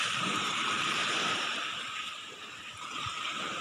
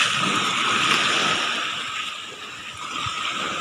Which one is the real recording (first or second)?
second